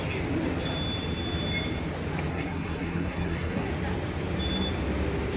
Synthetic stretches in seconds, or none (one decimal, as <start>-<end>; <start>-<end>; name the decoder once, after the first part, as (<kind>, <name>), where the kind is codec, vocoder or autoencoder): 2.3-3.7 (codec, SNAC)